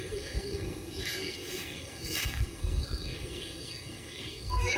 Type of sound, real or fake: fake